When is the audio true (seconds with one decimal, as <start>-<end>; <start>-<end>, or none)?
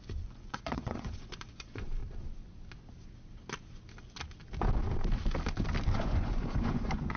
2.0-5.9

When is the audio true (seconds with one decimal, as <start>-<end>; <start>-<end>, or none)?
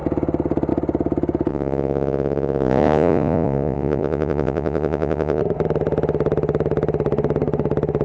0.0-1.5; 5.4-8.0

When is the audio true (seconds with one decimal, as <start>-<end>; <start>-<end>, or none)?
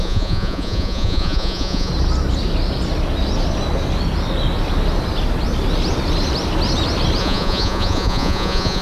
1.9-7.2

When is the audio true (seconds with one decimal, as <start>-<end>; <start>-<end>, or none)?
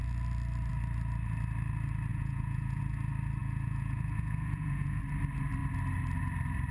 0.0-2.1; 2.8-3.4; 5.0-6.7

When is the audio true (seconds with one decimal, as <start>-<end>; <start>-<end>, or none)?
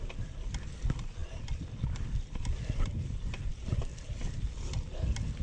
0.0-5.4